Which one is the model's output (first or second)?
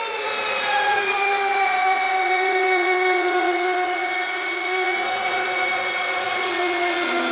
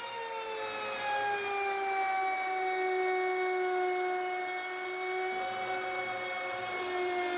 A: first